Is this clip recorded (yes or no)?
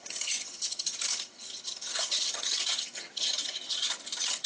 no